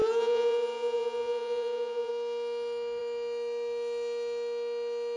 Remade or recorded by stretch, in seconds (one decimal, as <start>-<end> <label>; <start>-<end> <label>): 0.0-2.1 remade; 2.1-5.2 recorded